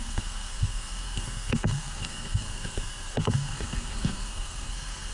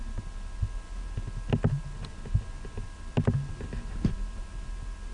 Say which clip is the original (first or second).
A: second